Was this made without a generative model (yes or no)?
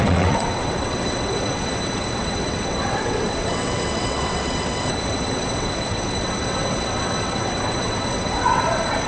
no